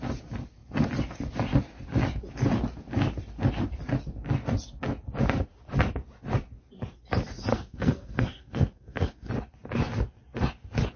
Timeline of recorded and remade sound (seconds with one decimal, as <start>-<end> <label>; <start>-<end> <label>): 0.0-7.5 recorded; 7.5-9.3 remade; 9.3-11.0 recorded